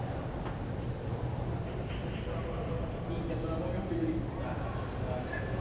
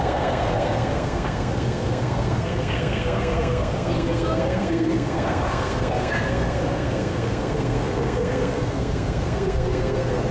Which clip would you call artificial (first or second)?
second